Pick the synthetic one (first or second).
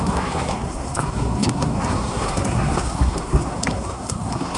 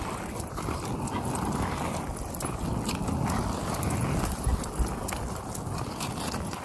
first